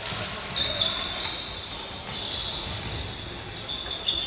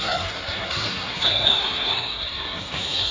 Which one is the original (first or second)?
first